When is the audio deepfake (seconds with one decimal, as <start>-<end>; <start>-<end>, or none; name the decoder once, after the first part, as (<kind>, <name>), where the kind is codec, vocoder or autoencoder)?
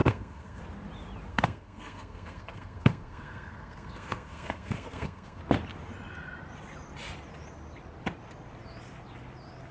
0.0-0.6 (codec, SNAC); 1.3-5.4